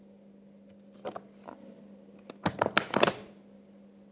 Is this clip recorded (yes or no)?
yes